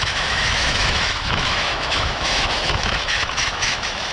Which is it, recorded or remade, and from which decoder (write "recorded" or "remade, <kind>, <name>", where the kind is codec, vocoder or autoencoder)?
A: remade, autoencoder, DAC-VAE